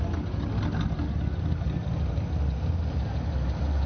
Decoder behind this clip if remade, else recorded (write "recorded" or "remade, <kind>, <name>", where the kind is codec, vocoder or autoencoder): recorded